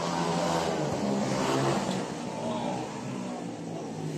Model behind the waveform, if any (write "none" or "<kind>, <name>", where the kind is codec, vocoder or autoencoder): none